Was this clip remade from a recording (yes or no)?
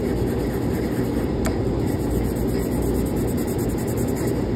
no